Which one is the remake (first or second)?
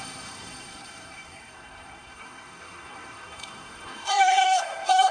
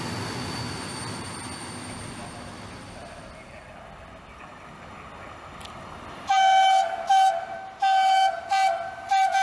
first